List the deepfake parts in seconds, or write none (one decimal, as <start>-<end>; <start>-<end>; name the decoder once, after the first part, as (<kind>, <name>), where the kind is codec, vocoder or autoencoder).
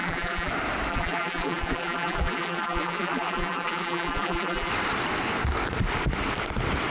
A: 0.0-0.5 (vocoder, BigVGAN v2); 0.9-4.7